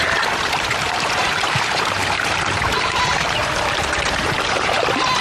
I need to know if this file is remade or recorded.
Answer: remade